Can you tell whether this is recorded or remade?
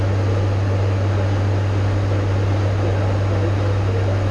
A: recorded